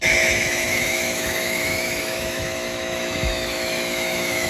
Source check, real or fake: fake